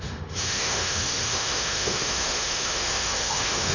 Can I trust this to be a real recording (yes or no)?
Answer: no